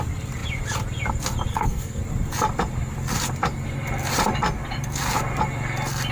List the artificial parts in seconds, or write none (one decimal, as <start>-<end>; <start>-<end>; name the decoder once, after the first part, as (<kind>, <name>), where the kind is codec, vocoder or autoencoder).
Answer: 1.5-2.0 (codec, SNAC)